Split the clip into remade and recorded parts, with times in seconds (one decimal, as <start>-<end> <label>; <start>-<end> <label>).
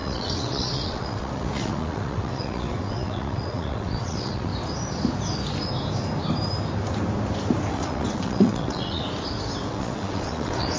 0.0-4.5 remade; 4.5-7.7 recorded; 7.7-9.0 remade; 9.0-9.7 recorded; 9.7-10.8 remade